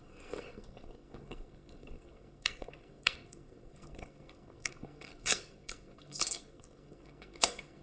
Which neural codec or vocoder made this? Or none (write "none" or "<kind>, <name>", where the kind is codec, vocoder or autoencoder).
codec, SNAC